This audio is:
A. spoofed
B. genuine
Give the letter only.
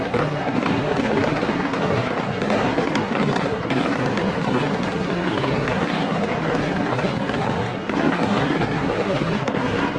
A